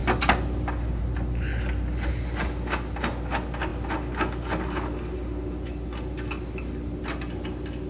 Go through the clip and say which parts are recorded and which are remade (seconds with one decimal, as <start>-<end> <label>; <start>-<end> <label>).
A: 0.0-7.9 recorded